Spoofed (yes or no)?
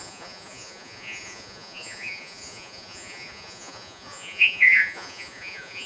yes